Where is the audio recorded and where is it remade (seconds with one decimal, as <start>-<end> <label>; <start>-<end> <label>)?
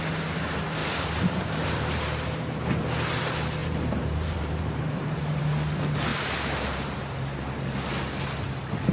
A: 0.0-0.8 recorded; 0.8-2.4 remade; 2.4-3.6 recorded; 3.6-5.4 remade; 5.4-6.1 recorded; 6.1-7.9 remade; 7.9-8.9 recorded